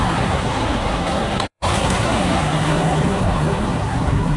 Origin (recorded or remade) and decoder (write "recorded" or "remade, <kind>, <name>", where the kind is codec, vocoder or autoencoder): remade, codec, SNAC